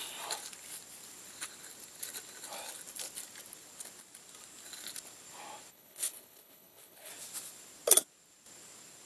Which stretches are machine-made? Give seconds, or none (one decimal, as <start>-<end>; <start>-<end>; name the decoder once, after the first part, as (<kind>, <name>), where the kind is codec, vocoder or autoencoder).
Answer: 5.7-7.1 (codec, HILCodec)